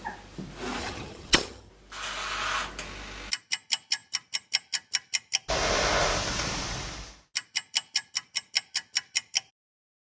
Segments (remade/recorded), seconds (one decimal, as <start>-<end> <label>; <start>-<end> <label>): 0.0-0.8 recorded; 0.8-1.7 remade; 1.7-10.0 recorded

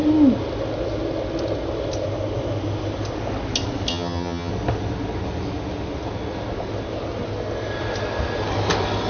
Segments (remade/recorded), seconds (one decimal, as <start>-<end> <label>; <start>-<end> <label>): 0.0-3.9 recorded; 3.9-4.5 remade; 4.5-9.1 recorded

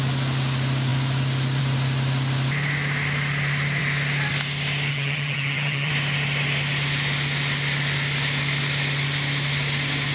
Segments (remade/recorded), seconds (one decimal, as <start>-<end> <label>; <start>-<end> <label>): 0.0-4.9 recorded; 4.9-5.9 remade; 5.9-10.1 recorded

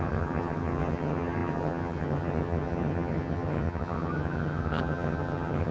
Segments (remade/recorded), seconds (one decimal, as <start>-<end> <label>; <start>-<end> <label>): 0.0-5.7 remade

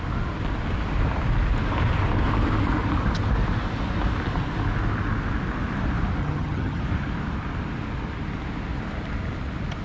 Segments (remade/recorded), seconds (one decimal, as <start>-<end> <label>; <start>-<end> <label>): 0.0-6.2 recorded; 6.2-6.8 remade; 6.8-9.8 recorded

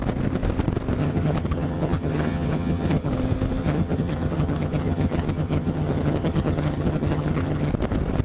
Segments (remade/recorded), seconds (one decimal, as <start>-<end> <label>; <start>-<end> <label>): 0.0-1.0 recorded; 1.0-3.1 remade; 3.1-3.6 recorded; 3.6-7.7 remade; 7.7-8.2 recorded

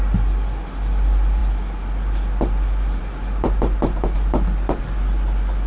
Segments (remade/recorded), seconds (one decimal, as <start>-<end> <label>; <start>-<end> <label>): 0.0-5.7 recorded

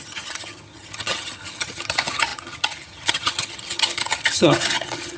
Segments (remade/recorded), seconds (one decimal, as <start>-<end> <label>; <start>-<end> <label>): 0.0-5.2 remade